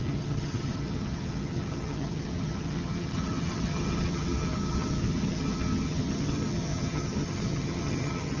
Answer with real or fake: fake